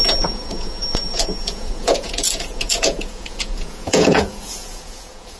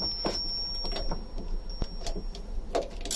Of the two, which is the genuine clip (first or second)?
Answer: second